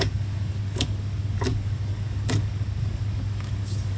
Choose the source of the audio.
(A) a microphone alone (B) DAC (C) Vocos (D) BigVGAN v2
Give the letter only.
B